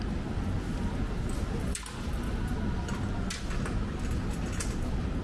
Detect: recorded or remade recorded